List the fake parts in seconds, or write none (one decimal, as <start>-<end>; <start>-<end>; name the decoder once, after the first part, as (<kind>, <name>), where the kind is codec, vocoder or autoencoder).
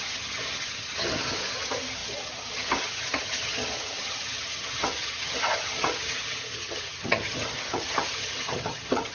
0.0-9.1 (vocoder, HiFi-GAN)